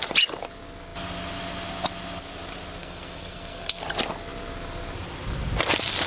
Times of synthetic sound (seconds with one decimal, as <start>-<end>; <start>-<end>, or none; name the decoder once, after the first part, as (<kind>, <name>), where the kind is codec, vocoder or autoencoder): 2.8-3.8 (codec, SNAC)